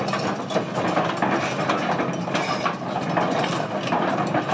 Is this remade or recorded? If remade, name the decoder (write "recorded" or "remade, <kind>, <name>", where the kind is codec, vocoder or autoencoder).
recorded